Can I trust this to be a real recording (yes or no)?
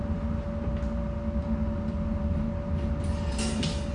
yes